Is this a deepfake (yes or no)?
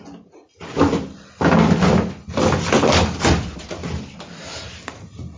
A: no